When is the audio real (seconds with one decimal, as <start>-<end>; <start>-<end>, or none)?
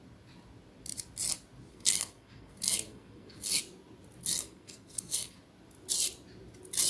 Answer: 0.0-1.7; 3.6-4.2; 5.4-6.9